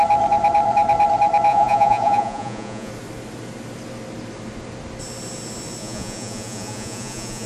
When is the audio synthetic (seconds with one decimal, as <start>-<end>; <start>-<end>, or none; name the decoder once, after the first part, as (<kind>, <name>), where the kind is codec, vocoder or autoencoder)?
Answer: 1.5-2.9 (vocoder, Vocos); 5.8-7.5